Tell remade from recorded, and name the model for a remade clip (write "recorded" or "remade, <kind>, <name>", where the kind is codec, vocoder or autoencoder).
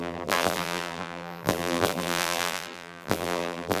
remade, vocoder, BigVGAN v2